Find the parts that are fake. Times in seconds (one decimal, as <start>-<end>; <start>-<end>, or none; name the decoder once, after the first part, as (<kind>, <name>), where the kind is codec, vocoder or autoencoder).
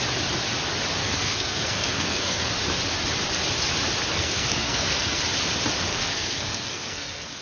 1.0-2.5 (codec, SNAC); 4.1-5.2; 5.9-7.4